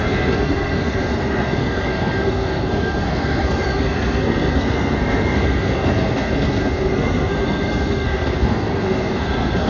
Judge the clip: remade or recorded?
remade